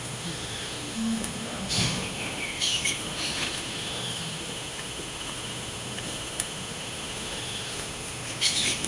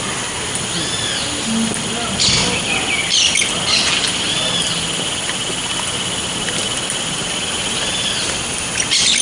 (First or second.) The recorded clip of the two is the second